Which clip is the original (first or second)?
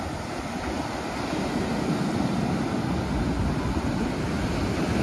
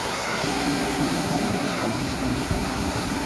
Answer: first